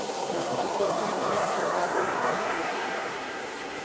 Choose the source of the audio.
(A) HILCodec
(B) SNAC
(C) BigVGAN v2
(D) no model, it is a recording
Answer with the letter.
B